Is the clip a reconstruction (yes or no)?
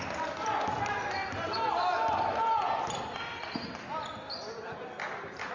no